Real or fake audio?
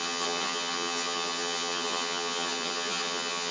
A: fake